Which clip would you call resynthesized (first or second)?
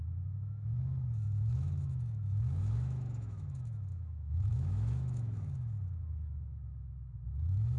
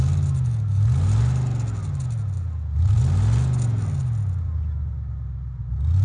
first